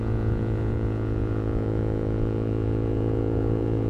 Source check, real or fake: fake